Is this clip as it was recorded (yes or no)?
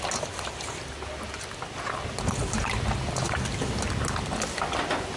yes